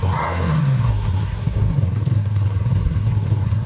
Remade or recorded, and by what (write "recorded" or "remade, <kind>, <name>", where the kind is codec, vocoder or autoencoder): remade, codec, SNAC